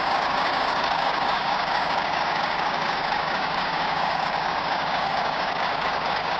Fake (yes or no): yes